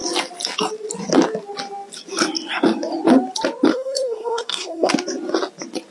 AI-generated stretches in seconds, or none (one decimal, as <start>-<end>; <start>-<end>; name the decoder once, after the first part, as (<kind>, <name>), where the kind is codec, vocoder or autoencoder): 3.7-4.9 (codec, SNAC)